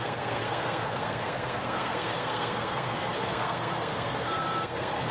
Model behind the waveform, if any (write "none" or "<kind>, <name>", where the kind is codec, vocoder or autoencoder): codec, SNAC